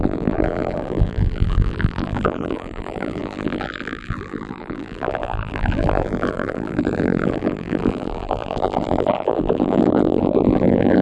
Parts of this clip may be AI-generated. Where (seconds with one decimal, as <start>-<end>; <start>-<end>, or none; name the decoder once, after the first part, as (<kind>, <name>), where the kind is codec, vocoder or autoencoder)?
0.0-11.0 (vocoder, BigVGAN v2)